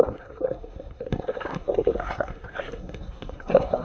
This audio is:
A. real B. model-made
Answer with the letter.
B